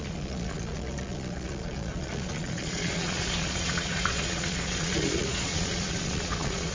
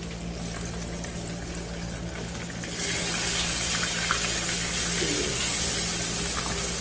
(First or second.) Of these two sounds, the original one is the second